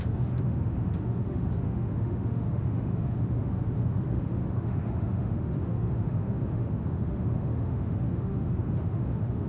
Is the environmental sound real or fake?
fake